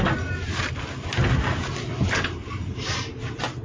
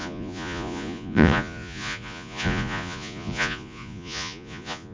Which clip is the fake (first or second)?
second